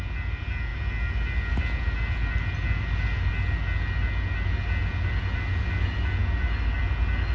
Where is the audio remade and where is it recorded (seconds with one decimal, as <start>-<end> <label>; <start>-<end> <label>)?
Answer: 0.0-7.3 recorded